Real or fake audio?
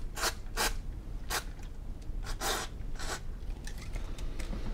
real